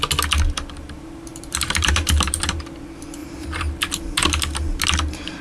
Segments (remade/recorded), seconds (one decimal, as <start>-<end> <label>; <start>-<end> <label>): 0.0-1.3 recorded; 1.3-2.6 remade; 2.6-3.2 recorded; 3.2-3.8 remade; 3.8-5.4 recorded